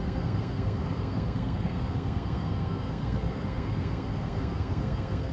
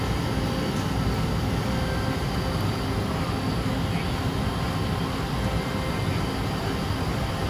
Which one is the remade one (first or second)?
first